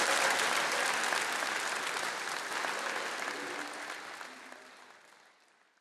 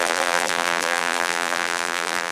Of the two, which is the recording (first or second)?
first